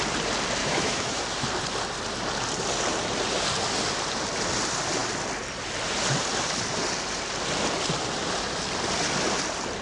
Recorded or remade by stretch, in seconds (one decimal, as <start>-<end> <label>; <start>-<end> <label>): 0.0-0.6 recorded; 0.6-1.2 remade; 1.2-9.8 recorded